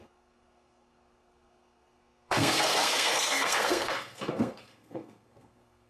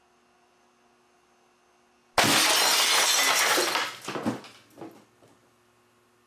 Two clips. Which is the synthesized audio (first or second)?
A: first